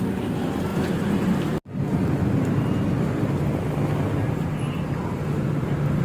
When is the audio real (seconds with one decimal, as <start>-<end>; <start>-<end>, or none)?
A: 0.0-6.0